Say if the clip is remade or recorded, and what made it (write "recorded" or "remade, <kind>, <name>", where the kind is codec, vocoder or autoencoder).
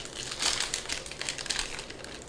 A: recorded